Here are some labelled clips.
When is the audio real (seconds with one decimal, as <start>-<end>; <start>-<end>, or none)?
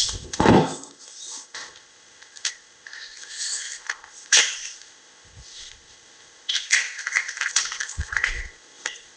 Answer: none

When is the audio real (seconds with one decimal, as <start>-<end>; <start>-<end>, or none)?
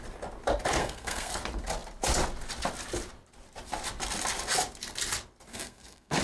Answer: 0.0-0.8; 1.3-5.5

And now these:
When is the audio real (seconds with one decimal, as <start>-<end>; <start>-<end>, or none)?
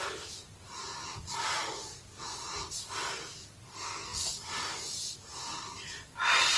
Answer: 0.0-3.7; 4.3-6.6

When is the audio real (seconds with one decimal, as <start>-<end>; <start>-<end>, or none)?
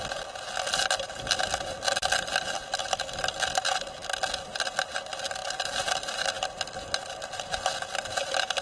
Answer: 0.0-8.6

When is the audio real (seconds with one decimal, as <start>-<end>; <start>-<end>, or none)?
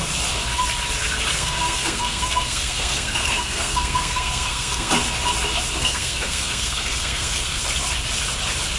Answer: 0.0-1.3; 4.9-5.8; 7.6-8.8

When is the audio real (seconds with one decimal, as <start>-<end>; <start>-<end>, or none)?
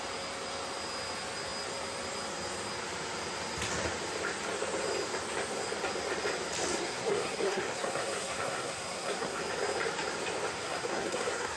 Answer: 0.0-6.7; 9.4-10.6